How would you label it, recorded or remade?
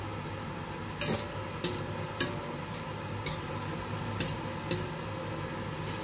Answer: recorded